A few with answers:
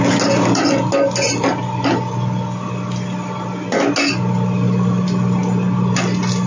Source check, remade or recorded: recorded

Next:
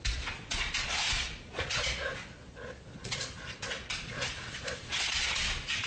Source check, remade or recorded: remade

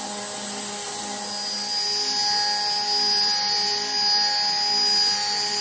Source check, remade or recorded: recorded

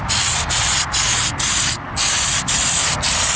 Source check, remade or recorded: recorded